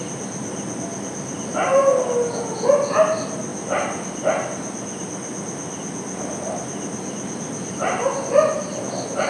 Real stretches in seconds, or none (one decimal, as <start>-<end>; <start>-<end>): 0.0-9.3